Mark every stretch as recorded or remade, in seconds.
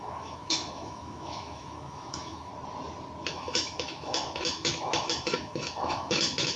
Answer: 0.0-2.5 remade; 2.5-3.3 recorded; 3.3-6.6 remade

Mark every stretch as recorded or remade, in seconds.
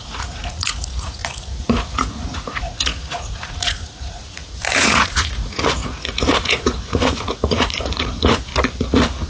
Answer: 0.0-8.5 remade; 8.5-9.3 recorded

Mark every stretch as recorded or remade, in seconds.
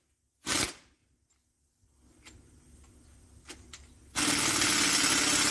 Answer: 0.0-5.5 recorded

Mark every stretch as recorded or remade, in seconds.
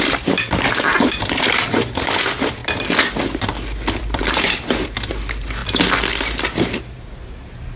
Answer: 0.0-2.6 remade; 2.6-4.0 recorded; 4.0-5.6 remade; 5.6-6.8 recorded; 6.8-7.8 remade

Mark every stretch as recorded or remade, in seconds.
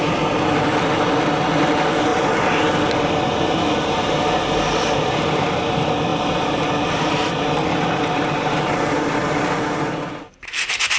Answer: 0.0-2.1 recorded; 2.1-2.9 remade; 2.9-6.1 recorded; 6.1-7.1 remade; 7.1-11.0 recorded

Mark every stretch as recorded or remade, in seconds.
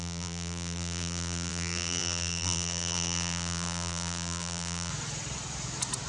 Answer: 0.0-4.9 remade; 4.9-6.1 recorded